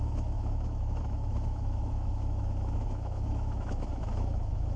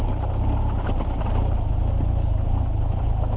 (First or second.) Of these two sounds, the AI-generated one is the first